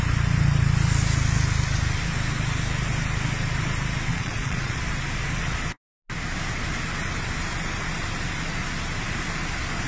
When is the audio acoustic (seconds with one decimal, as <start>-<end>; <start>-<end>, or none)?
0.0-4.1; 4.8-9.9

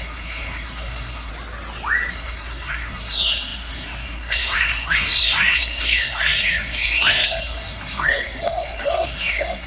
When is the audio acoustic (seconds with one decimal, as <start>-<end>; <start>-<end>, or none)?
1.3-2.1

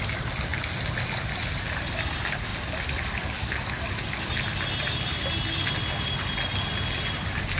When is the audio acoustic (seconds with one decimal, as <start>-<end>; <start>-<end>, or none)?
0.0-7.6

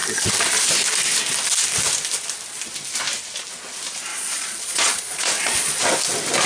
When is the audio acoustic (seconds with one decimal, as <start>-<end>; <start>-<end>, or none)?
0.0-4.1; 5.8-6.5

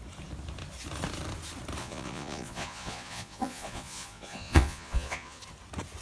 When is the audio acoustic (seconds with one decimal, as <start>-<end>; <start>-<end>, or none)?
0.0-1.8; 5.4-6.0

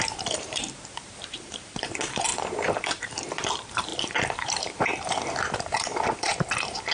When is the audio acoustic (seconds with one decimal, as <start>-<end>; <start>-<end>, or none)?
none